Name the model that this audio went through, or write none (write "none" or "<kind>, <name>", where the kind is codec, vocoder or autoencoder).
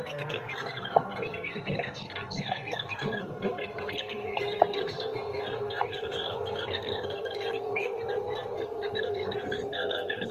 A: codec, SNAC